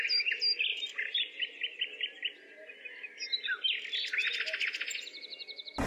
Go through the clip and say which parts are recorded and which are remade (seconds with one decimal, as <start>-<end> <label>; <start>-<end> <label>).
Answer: 0.0-0.7 recorded; 0.7-1.8 remade; 1.8-5.9 recorded